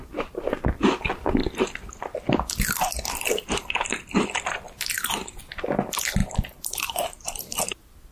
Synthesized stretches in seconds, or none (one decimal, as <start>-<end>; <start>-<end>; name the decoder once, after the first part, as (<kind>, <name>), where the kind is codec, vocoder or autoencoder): 6.2-7.6 (vocoder, BigVGAN v2)